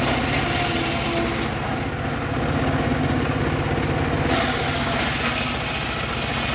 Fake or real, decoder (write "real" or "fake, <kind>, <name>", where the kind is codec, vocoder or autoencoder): real